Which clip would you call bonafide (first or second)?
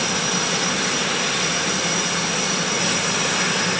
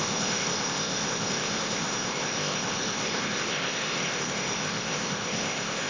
first